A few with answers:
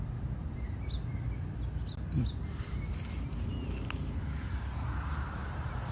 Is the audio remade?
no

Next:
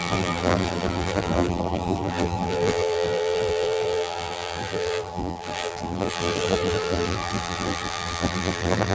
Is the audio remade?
yes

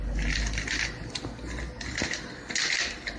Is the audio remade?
no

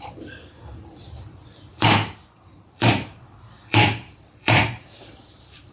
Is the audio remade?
yes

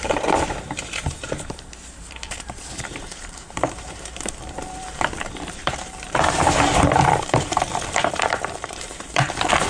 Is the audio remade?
yes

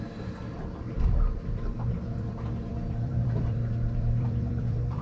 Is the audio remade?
yes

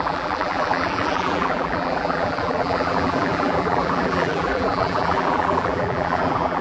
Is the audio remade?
yes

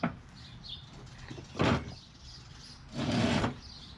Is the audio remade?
no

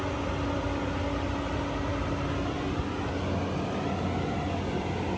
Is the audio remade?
no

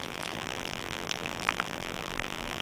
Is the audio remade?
yes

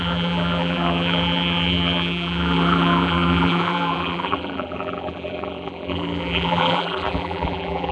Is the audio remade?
yes